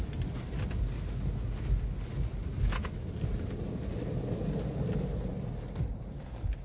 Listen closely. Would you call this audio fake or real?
real